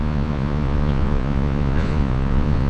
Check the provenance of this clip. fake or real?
fake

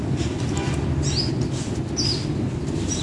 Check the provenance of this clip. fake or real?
real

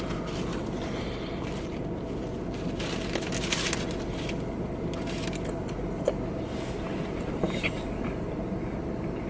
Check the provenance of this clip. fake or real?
real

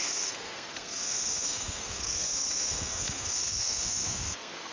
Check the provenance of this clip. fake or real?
fake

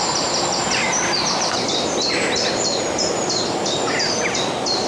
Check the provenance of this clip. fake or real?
real